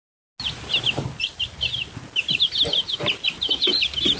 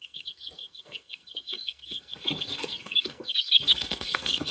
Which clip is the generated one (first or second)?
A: second